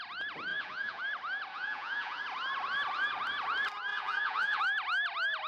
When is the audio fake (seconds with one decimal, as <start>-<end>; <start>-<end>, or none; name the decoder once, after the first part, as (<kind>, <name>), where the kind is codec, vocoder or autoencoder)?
0.5-1.0 (vocoder, Vocos); 1.5-2.2; 3.9-4.6